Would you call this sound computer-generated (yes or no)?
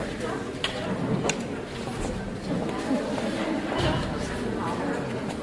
no